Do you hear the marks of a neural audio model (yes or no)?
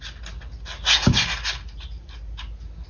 no